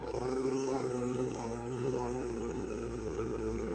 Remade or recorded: remade